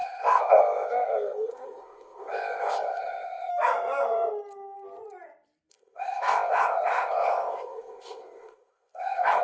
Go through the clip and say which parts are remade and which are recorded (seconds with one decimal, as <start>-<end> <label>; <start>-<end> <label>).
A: 0.0-3.5 remade; 3.5-5.7 recorded; 5.7-9.4 remade